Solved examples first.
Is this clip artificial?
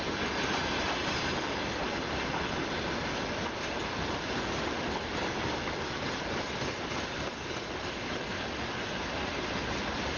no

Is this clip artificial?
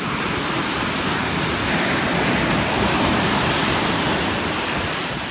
no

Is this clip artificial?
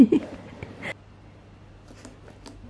no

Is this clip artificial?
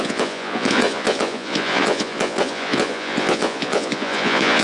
yes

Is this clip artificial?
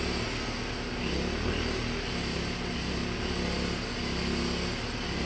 no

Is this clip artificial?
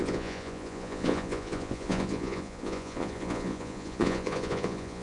yes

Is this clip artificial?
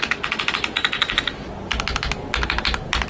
no